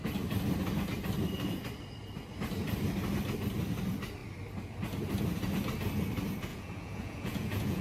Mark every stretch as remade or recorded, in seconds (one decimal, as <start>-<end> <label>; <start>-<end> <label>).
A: 0.0-6.5 recorded; 6.5-7.8 remade